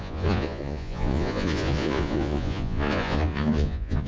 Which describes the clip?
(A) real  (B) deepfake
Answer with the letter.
B